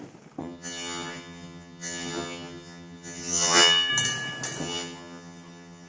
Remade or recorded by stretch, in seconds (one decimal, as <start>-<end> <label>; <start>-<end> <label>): 0.0-0.4 recorded; 0.4-3.9 remade; 3.9-4.6 recorded; 4.6-5.9 remade